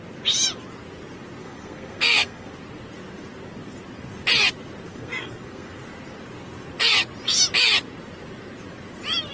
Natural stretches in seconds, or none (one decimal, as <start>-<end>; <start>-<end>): 0.0-1.4; 2.5-4.9; 5.8-9.3